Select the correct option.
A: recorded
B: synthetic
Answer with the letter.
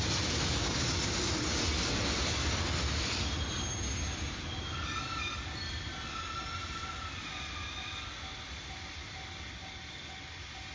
A